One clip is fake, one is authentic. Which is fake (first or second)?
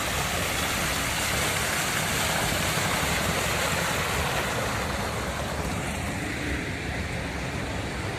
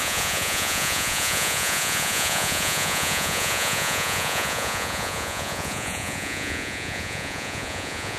second